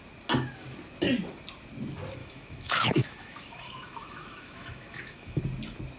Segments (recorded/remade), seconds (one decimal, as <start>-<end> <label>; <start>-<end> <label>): 0.0-2.2 recorded; 2.2-5.4 remade; 5.4-6.0 recorded

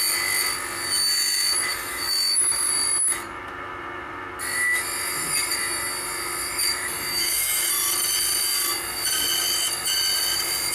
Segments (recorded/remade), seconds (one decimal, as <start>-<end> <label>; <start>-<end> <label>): 0.0-1.7 recorded; 1.7-2.7 remade; 2.7-7.1 recorded; 7.1-7.7 remade; 7.7-10.7 recorded

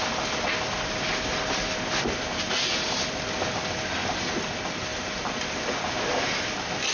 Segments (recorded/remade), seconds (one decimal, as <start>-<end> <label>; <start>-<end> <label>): 0.0-6.9 recorded

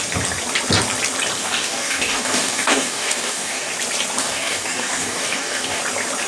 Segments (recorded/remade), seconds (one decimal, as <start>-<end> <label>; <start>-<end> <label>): 0.0-1.4 recorded; 1.4-3.7 remade; 3.7-4.2 recorded; 4.2-5.8 remade; 5.8-6.3 recorded

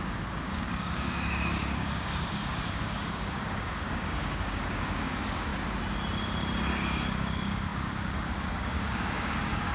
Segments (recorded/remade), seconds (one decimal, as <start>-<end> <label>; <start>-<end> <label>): 0.0-5.5 remade; 5.5-7.1 recorded; 7.1-9.7 remade

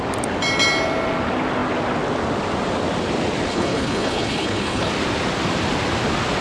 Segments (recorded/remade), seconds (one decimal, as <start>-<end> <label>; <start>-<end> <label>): 0.0-3.5 recorded; 3.5-4.9 remade; 4.9-6.4 recorded

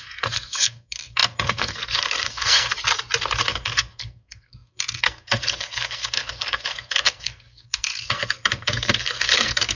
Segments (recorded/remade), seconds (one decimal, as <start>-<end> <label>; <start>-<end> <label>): 0.0-2.7 remade; 2.7-3.4 recorded; 3.4-9.8 remade

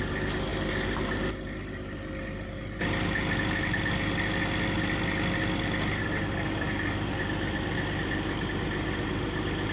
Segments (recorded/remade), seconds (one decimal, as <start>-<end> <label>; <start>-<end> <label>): 0.0-9.7 recorded